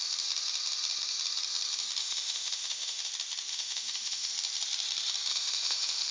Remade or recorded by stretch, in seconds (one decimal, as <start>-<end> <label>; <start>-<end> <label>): 0.0-2.0 recorded; 2.0-3.1 remade; 3.1-3.5 recorded; 3.5-4.3 remade; 4.3-5.3 recorded; 5.3-6.1 remade